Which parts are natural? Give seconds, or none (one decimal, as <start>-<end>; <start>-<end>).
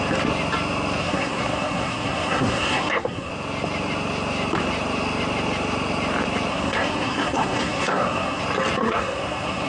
0.0-1.0; 3.3-6.5; 8.4-8.8